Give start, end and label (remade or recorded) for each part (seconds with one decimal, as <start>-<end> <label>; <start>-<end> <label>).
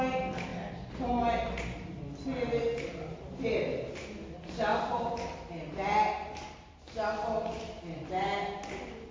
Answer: 0.0-9.1 recorded